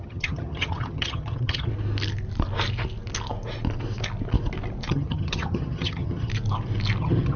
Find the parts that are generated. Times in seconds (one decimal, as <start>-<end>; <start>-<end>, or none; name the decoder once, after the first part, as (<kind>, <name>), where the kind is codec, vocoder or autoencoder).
0.0-1.7 (vocoder, HiFi-GAN); 4.9-6.3; 7.0-7.4